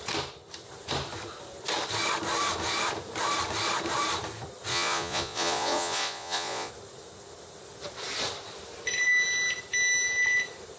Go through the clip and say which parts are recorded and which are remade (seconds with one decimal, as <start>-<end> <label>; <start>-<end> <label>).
0.0-4.7 recorded; 4.7-6.7 remade; 6.7-10.8 recorded